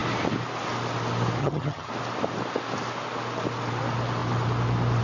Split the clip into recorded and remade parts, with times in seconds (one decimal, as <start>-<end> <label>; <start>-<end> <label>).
0.0-1.4 recorded; 1.4-1.9 remade; 1.9-5.0 recorded